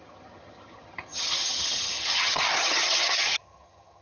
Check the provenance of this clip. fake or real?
fake